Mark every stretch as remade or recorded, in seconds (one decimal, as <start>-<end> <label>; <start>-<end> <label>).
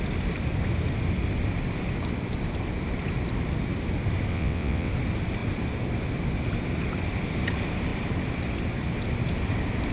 0.0-4.3 recorded; 4.3-4.9 remade; 4.9-9.9 recorded